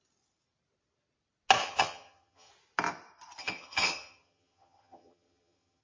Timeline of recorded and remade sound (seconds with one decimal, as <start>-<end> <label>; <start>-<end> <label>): 0.0-1.6 recorded; 1.6-2.5 remade; 2.5-3.4 recorded; 3.4-5.8 remade

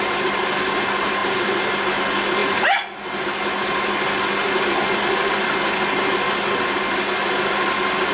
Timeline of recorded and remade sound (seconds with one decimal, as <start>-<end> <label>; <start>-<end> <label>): 0.0-8.1 recorded

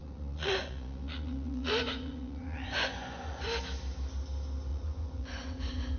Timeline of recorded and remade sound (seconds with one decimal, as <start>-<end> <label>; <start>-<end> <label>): 0.0-3.6 remade; 3.6-4.7 recorded; 4.7-6.0 remade

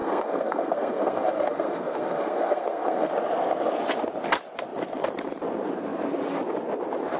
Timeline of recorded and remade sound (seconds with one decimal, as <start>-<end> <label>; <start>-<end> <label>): 0.0-3.1 remade; 3.1-7.2 recorded

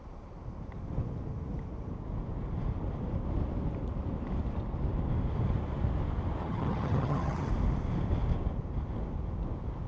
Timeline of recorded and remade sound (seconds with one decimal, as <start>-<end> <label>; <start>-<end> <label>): 0.0-6.4 recorded; 6.4-7.5 remade; 7.5-9.9 recorded

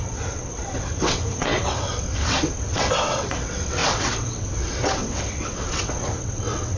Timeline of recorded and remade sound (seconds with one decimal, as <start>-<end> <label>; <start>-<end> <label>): 0.0-6.8 remade

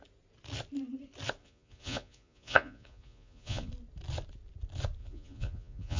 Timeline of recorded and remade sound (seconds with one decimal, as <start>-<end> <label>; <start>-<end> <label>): 0.0-1.4 recorded; 1.4-3.7 remade; 3.7-5.0 recorded; 5.0-6.0 remade